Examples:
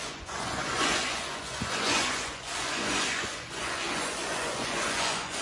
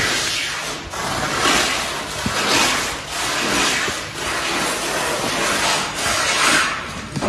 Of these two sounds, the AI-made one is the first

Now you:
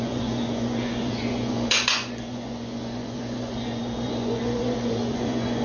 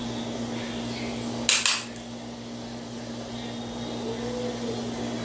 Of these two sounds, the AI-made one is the first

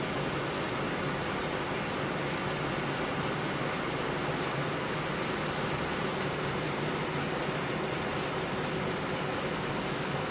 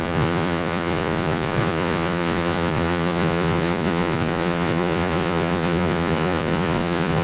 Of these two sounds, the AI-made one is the second